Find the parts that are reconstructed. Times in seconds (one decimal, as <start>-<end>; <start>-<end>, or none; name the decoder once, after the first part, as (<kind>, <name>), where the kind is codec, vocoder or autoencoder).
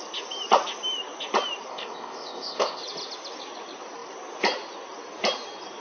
1.7-2.8 (codec, ZipCodec)